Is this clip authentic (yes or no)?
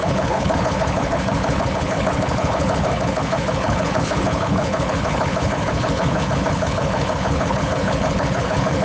no